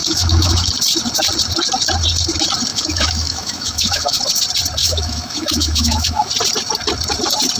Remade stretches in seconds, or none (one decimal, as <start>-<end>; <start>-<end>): 0.0-0.7; 2.7-4.2; 4.8-6.3